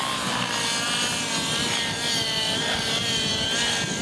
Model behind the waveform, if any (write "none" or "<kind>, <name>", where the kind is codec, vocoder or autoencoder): none